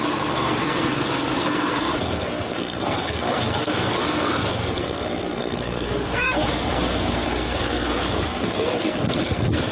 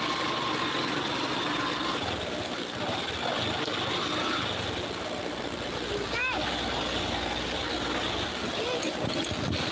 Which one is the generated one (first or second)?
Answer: first